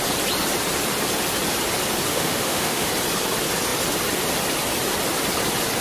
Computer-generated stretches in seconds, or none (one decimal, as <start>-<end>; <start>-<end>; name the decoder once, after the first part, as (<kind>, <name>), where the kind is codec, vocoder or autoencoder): 2.1-2.9 (autoencoder, DAC-VAE)